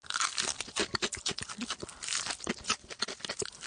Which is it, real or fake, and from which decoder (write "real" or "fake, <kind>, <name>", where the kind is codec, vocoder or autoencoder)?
real